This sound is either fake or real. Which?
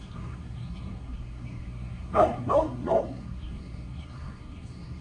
fake